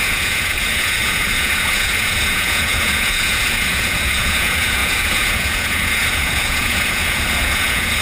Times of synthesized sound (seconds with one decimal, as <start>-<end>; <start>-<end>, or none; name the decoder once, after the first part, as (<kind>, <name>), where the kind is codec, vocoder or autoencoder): 0.0-8.0 (vocoder, Vocos)